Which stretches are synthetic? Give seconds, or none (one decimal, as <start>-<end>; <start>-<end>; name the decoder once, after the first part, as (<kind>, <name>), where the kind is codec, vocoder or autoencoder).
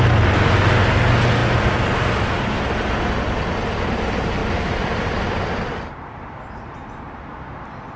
4.4-7.4 (vocoder, BigVGAN v2)